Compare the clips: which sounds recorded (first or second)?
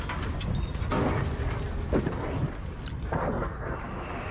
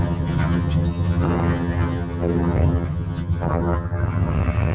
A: first